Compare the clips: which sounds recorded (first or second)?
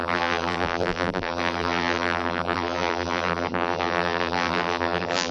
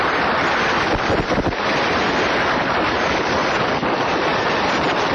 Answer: second